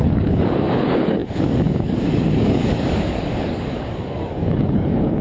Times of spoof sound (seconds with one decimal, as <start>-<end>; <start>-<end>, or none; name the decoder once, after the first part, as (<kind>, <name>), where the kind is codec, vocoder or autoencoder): 0.0-5.2 (codec, DAC)